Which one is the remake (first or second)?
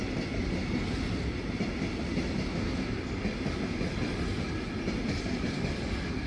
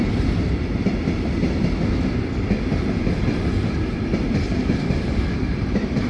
second